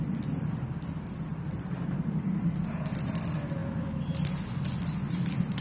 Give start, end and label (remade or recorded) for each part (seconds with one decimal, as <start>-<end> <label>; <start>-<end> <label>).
0.0-1.3 recorded; 1.3-2.4 remade; 2.4-5.6 recorded